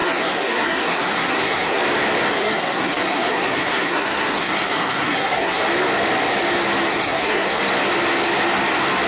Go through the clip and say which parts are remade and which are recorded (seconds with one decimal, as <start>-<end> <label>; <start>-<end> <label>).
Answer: 0.0-1.8 remade; 1.8-2.3 recorded; 2.3-5.6 remade; 5.6-6.9 recorded; 6.9-7.6 remade; 7.6-9.1 recorded